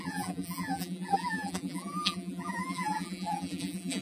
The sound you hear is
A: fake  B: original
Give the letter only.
A